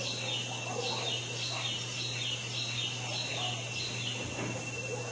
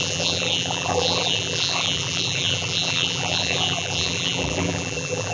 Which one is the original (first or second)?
first